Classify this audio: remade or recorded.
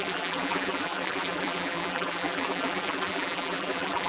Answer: remade